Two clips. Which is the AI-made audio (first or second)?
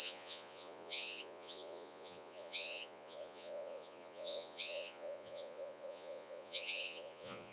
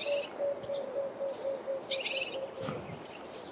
first